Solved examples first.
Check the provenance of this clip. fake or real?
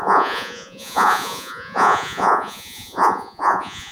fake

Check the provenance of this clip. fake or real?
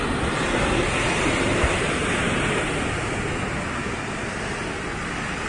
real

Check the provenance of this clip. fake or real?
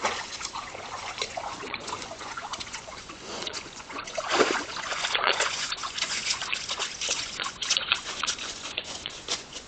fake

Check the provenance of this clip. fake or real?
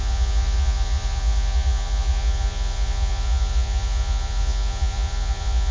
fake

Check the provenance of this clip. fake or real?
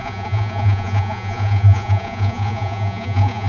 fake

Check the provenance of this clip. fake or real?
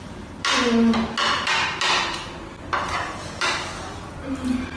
real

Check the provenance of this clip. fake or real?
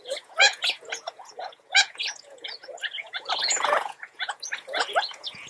fake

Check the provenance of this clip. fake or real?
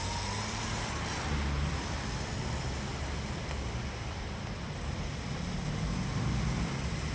real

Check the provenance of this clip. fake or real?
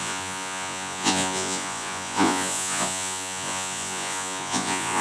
fake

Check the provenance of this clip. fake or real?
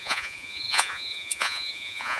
fake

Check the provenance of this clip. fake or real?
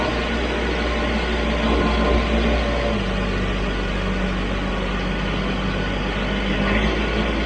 real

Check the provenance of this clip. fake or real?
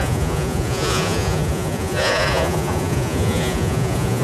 fake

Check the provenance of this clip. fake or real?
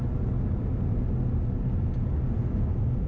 real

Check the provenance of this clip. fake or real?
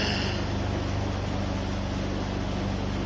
real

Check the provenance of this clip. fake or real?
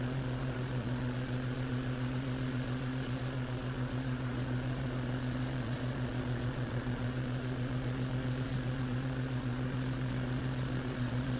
fake